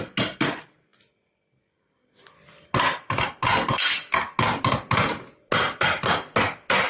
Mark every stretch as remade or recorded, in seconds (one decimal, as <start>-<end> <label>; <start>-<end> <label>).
0.0-6.9 recorded